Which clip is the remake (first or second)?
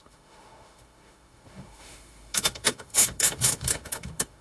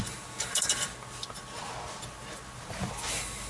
first